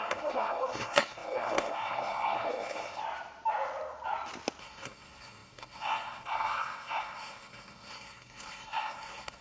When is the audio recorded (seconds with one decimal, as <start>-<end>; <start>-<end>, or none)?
3.0-4.6